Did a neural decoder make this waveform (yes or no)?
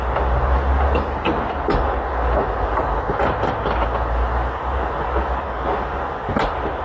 no